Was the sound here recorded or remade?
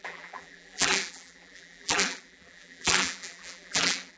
remade